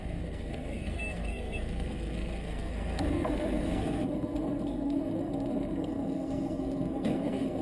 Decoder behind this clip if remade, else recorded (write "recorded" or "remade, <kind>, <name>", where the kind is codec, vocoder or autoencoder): remade, codec, SNAC